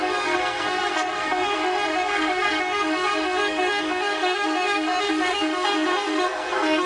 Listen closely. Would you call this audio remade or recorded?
remade